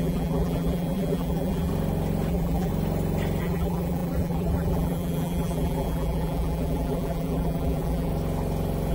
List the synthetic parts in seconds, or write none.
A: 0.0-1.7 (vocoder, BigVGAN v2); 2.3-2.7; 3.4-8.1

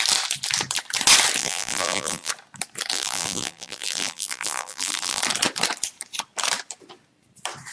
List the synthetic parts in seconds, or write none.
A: 1.4-2.3 (vocoder, BigVGAN v2); 2.9-5.2

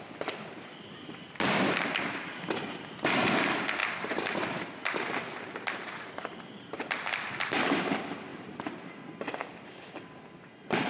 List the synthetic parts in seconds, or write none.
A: none

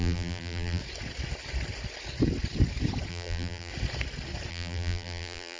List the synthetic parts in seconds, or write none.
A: 0.0-0.8 (vocoder, BigVGAN v2); 3.1-3.7; 4.5-5.6

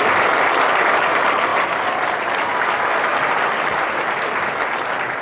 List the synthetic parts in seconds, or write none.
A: none